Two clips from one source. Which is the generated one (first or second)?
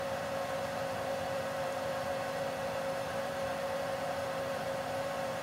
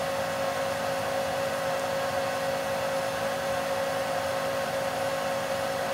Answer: first